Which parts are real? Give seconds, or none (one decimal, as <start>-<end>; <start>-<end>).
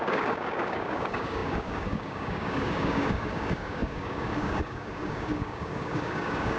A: none